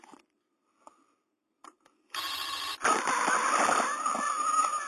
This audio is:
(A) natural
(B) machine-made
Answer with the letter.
A